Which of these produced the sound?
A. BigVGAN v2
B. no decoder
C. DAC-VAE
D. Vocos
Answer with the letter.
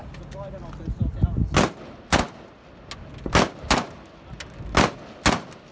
B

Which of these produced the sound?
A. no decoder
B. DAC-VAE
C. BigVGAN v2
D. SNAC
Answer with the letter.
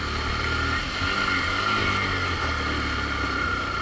A